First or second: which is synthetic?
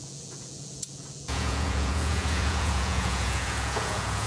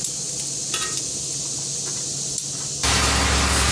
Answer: first